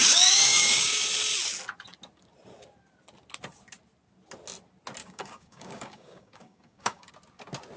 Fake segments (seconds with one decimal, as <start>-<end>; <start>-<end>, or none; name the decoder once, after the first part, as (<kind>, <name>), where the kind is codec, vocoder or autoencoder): 0.0-0.9 (codec, DAC); 5.0-7.1